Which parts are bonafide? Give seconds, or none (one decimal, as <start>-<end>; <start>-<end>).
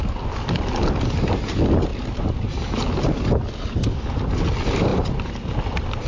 0.0-1.9; 2.5-6.1